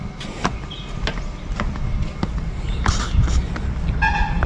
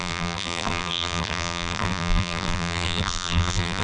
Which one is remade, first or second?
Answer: second